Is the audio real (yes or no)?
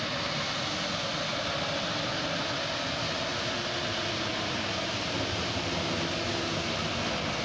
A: yes